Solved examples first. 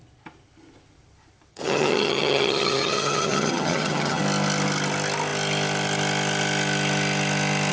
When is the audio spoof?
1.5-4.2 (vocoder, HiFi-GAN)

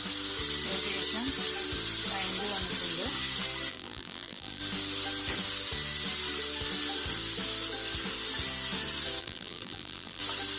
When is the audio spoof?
3.7-4.6 (vocoder, BigVGAN v2); 9.2-10.2

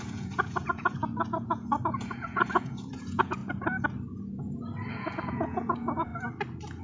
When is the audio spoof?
0.0-3.4 (vocoder, Vocos); 4.9-6.1

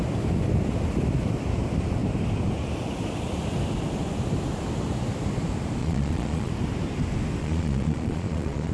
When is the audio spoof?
5.8-6.5 (vocoder, Vocos); 7.4-8.7

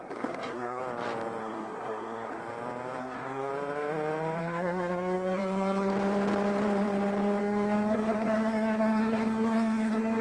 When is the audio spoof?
0.0-0.8 (codec, SNAC); 1.4-2.4; 3.0-3.5; 4.4-5.9; 7.4-10.2

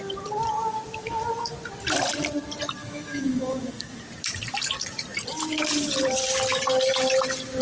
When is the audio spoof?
2.8-4.0 (autoencoder, DAC-VAE)

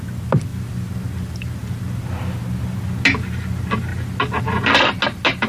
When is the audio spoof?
none